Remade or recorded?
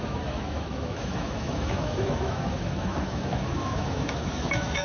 remade